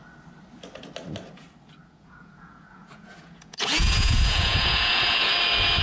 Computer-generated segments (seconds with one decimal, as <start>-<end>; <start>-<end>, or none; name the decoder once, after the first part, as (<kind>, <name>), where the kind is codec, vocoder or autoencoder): 1.8-5.3 (vocoder, Vocos)